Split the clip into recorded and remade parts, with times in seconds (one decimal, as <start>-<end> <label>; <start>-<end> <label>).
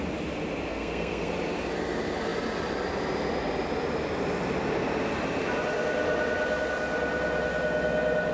0.0-0.7 recorded; 0.7-1.3 remade; 1.3-8.3 recorded